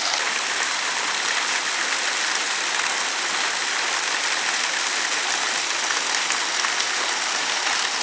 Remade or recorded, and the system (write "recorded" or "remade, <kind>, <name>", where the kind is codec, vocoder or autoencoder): recorded